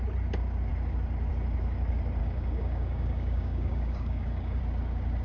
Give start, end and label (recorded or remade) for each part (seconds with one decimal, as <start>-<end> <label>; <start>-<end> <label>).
0.0-2.2 recorded; 2.2-4.6 remade; 4.6-5.2 recorded